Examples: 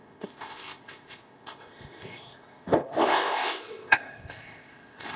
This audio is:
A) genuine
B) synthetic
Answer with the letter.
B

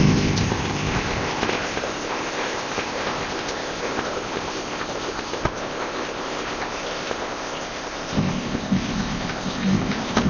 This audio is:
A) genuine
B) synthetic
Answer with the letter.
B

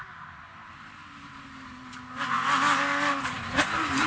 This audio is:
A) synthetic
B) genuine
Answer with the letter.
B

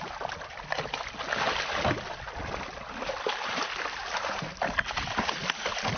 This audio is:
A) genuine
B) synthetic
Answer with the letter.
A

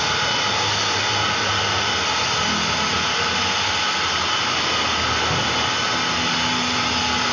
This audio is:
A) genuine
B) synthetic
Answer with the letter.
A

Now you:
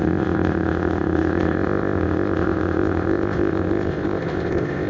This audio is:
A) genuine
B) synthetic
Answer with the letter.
B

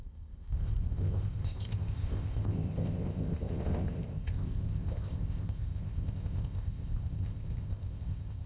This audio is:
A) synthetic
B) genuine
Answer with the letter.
A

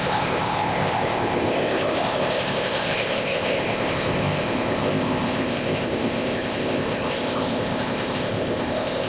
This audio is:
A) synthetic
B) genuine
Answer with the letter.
A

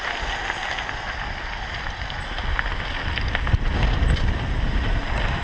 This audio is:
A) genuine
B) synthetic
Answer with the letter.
A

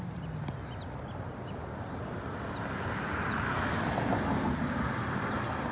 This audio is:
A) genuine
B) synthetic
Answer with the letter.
A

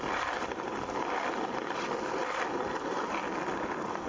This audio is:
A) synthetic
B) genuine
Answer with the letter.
B